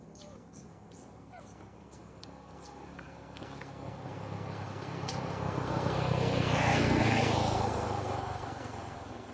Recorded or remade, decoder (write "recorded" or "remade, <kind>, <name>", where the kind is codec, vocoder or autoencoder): remade, codec, SNAC